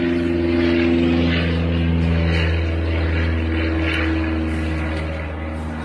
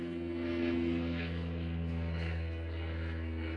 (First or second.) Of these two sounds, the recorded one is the first